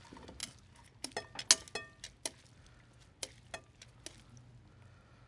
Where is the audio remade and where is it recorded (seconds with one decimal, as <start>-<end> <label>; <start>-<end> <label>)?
0.0-5.3 recorded